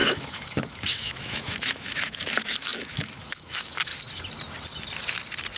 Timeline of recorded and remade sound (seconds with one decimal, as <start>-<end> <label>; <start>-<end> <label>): 0.0-3.9 remade; 3.9-5.6 recorded